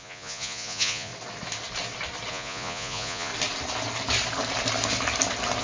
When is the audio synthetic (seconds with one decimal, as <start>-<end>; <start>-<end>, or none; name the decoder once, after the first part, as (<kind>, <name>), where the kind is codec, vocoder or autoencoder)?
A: 0.0-1.1 (vocoder, Vocos); 2.3-3.3